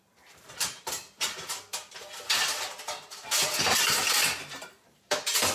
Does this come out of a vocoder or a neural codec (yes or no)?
yes